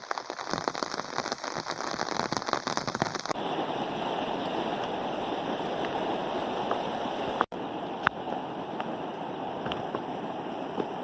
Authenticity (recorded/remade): recorded